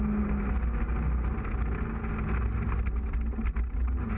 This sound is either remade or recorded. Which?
recorded